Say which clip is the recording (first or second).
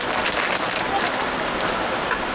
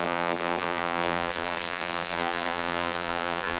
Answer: first